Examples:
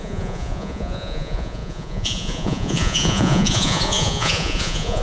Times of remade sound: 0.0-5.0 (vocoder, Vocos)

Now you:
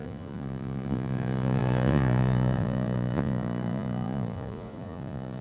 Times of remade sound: 0.0-5.4 (vocoder, Vocos)

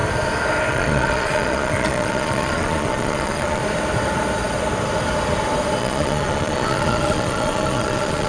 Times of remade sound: 0.7-3.6 (vocoder, Vocos); 5.8-8.3

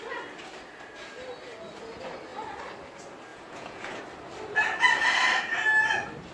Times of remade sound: 3.3-4.0 (vocoder, Vocos)

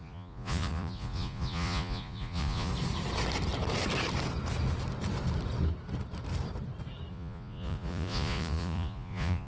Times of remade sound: 0.0-2.7 (vocoder, Vocos); 7.1-9.5

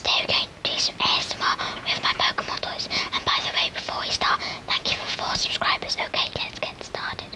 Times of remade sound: 1.2-5.5 (vocoder, Vocos)